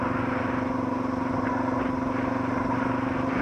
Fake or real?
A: real